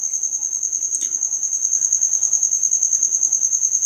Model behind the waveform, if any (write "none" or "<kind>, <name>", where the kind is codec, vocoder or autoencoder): none